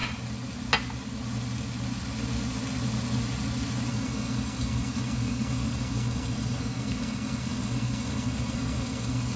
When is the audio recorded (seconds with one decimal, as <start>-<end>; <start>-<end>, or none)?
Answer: 0.0-3.9